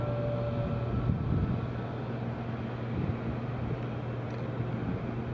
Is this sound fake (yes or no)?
no